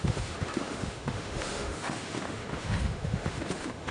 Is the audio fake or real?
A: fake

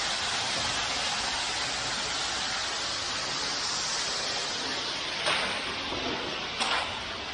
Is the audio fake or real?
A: real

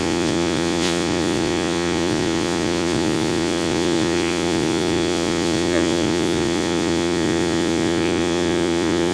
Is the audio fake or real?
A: fake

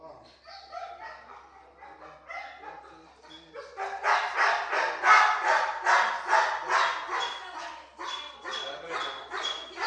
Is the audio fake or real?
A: real